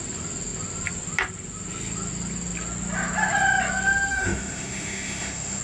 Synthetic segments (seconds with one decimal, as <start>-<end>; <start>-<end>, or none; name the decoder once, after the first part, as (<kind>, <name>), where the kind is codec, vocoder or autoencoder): 4.1-5.6 (autoencoder, DAC-VAE)